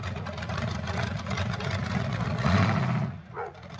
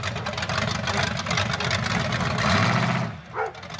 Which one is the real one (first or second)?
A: second